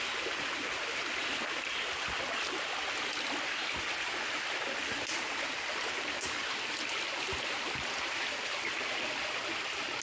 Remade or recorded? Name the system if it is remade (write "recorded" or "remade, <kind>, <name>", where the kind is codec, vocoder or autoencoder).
recorded